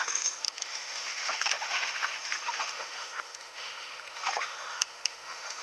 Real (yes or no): no